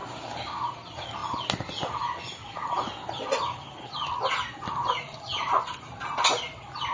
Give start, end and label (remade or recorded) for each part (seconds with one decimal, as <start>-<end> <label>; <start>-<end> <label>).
0.0-6.9 recorded